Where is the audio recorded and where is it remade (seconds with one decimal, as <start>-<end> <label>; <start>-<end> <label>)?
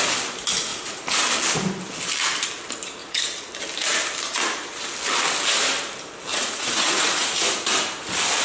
0.0-0.7 recorded; 0.7-1.2 remade; 1.2-3.0 recorded; 3.0-3.5 remade; 3.5-6.3 recorded; 6.3-7.7 remade; 7.7-8.4 recorded